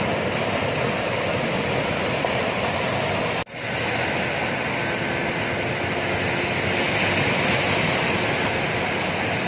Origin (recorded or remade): recorded